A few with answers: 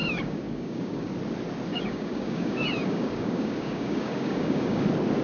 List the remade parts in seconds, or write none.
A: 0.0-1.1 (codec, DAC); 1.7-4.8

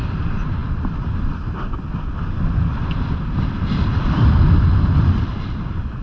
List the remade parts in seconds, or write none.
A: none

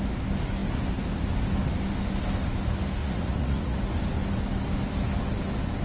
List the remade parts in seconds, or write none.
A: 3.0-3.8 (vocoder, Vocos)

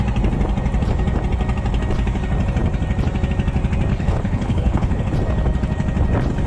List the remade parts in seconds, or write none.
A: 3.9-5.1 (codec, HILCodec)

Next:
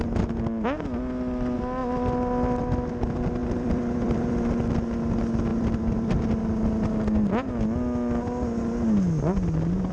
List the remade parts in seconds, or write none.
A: 3.4-4.5 (vocoder, BigVGAN v2); 5.5-6.2

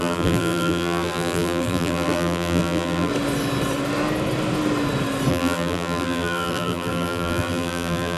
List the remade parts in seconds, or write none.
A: 0.0-3.1 (vocoder, BigVGAN v2); 5.3-8.2

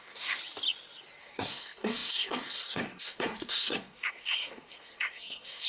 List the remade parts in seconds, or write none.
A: 0.0-0.4 (codec, SNAC); 1.2-5.7